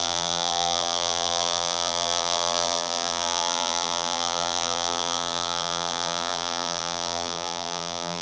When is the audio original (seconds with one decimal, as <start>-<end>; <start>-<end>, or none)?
none

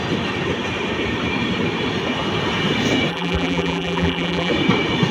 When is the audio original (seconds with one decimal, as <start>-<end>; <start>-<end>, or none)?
0.0-3.1; 4.5-5.1

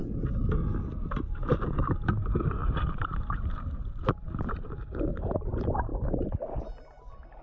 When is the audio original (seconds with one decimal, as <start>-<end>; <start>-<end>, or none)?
0.0-2.6; 5.1-7.4

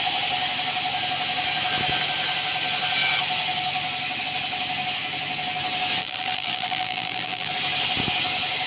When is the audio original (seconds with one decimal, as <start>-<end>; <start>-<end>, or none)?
0.0-6.0; 7.5-8.7

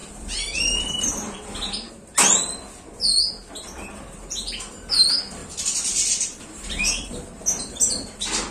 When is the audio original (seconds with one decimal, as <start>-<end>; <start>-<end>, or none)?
1.9-5.4